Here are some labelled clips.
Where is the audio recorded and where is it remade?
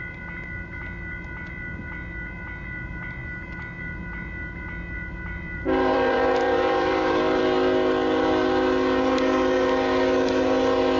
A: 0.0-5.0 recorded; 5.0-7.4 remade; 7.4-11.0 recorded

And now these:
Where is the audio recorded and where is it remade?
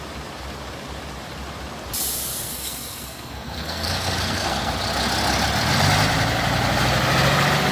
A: 0.0-2.3 recorded; 2.3-4.7 remade; 4.7-7.7 recorded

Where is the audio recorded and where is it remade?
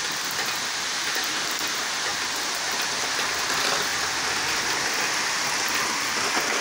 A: 0.0-6.6 recorded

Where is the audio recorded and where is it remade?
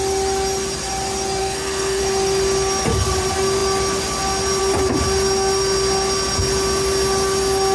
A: 0.0-1.4 recorded; 1.4-2.0 remade; 2.0-7.7 recorded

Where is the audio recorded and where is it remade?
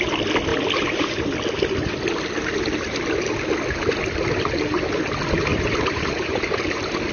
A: 0.0-5.5 recorded; 5.5-7.1 remade